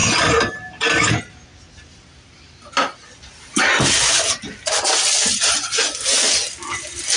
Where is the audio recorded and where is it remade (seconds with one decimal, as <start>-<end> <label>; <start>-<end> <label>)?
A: 0.0-7.2 recorded